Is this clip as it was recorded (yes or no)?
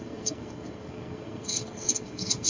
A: no